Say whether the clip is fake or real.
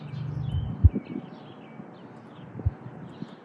real